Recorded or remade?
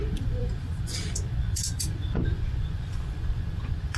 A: remade